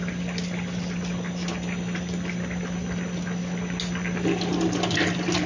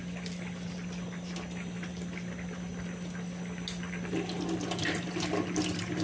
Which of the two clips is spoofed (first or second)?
second